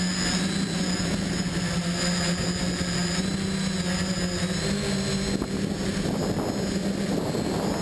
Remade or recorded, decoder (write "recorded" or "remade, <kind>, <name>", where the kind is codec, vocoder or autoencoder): recorded